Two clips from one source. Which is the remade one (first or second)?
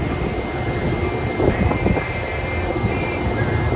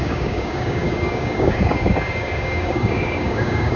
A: second